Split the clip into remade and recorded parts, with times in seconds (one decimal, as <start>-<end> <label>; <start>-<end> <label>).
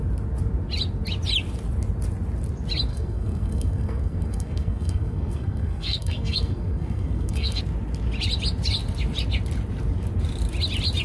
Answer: 0.0-2.9 recorded; 2.9-7.6 remade; 7.6-11.0 recorded